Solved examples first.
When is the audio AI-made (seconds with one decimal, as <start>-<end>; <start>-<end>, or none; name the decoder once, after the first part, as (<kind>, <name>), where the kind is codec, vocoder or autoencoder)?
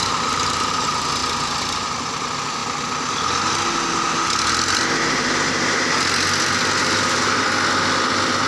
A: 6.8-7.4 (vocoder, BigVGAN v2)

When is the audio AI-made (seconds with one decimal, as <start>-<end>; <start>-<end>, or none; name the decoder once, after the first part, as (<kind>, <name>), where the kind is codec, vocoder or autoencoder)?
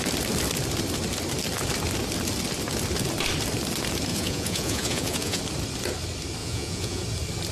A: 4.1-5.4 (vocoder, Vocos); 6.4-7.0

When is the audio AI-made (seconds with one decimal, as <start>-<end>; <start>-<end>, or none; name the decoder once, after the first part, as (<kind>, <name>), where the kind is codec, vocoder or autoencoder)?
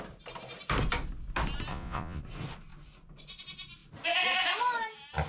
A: 1.7-2.2 (vocoder, Vocos)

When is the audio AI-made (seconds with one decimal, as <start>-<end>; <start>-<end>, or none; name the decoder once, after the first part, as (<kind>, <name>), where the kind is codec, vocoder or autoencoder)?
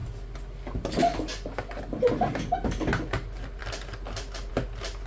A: none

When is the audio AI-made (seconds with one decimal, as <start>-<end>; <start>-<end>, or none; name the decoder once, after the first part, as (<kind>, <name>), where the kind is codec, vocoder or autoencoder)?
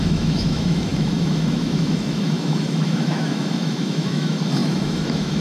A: 0.0-5.4 (autoencoder, DAC-VAE)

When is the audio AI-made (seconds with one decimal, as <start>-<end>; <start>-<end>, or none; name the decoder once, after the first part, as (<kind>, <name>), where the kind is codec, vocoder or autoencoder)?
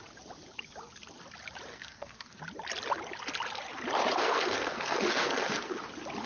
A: 1.7-2.4 (codec, SNAC); 4.2-5.8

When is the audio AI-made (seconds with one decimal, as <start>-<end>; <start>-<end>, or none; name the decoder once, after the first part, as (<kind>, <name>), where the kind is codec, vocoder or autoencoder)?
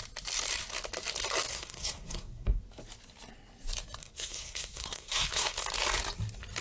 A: 1.5-2.6 (codec, SNAC); 4.0-5.6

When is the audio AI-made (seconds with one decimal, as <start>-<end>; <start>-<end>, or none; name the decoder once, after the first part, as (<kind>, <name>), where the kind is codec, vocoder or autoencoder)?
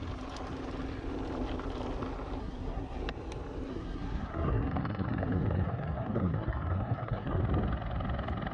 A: 2.4-3.0 (codec, SNAC); 3.7-7.4